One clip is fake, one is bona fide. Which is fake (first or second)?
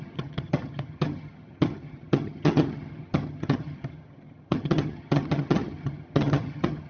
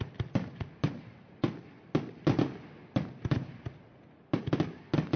first